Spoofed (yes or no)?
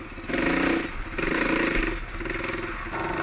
no